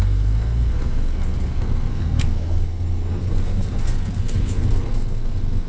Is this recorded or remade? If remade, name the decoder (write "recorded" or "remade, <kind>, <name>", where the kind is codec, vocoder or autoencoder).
remade, codec, SNAC